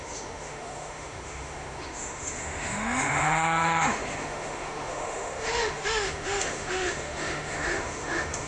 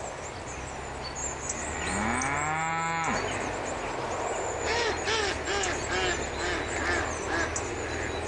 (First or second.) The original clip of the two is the second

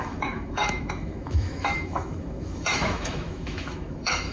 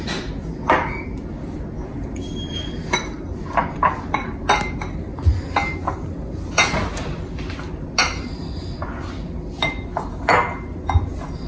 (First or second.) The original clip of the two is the second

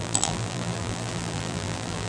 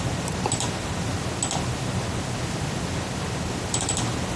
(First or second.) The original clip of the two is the second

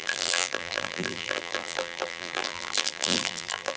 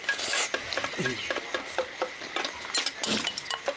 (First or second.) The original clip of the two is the second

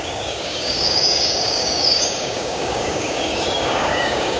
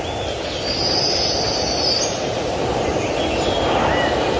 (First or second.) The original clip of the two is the second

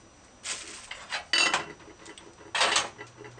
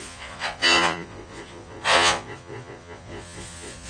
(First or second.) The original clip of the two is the first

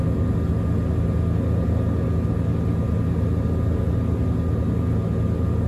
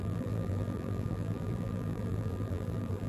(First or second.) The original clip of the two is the first